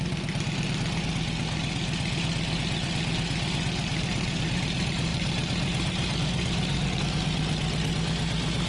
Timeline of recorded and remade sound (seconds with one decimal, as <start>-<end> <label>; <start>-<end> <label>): 0.0-3.9 recorded; 3.9-4.6 remade; 4.6-5.1 recorded; 5.1-7.0 remade; 7.0-8.7 recorded